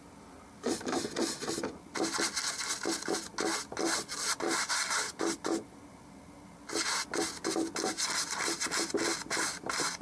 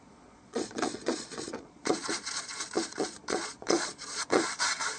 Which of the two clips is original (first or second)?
first